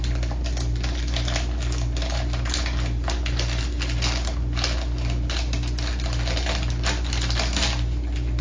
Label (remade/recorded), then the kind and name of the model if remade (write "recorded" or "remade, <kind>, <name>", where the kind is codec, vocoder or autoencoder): recorded